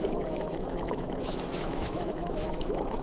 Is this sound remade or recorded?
remade